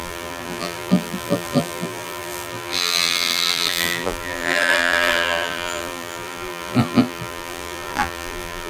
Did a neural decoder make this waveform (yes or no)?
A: yes